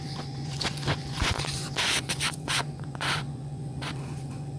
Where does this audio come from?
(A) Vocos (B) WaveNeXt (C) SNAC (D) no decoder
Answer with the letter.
A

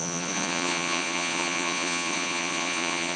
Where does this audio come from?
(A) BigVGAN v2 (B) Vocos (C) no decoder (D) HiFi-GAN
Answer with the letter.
B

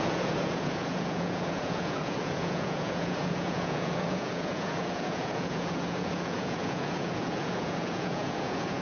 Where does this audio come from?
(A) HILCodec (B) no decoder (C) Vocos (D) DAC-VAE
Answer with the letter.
C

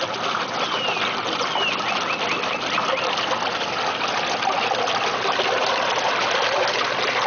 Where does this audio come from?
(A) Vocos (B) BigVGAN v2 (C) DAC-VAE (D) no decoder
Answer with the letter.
D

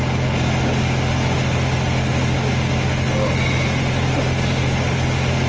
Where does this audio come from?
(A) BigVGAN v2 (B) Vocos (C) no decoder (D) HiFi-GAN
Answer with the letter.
C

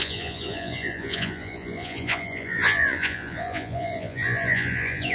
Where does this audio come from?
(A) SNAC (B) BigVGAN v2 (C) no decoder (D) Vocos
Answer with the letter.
D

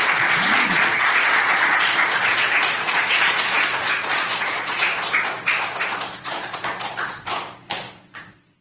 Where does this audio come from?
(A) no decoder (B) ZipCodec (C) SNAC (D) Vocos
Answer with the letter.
D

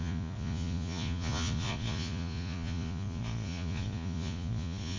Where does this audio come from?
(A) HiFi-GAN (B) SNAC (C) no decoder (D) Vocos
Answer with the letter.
D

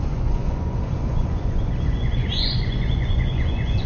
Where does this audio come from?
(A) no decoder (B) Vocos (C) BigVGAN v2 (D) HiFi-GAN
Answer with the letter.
B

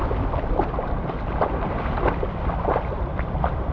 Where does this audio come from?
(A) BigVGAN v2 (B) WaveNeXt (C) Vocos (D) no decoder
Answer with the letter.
D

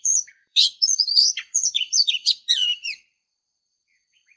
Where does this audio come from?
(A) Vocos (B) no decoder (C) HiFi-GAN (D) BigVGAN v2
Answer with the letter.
A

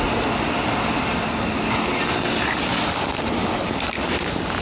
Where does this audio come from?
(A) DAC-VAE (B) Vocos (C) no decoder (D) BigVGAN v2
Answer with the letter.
C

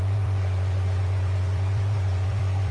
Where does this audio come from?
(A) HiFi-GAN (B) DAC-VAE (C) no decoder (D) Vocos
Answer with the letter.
D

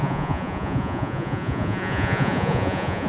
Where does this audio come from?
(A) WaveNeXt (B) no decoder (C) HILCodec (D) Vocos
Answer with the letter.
D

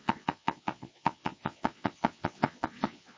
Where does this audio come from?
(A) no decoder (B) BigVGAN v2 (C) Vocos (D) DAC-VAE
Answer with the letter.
C